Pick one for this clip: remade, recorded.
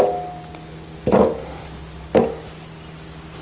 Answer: recorded